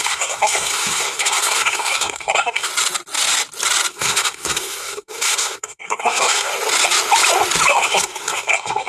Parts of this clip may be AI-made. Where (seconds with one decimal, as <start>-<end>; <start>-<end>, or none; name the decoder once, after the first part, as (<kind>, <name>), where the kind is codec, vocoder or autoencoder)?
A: 0.0-2.7 (codec, SNAC); 3.9-6.5; 7.7-8.9